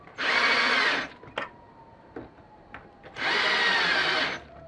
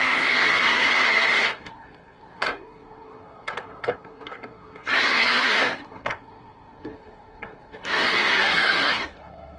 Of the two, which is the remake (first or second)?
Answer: second